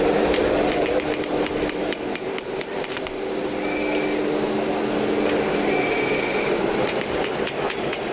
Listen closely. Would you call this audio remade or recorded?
recorded